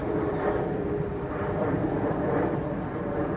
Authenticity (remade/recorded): remade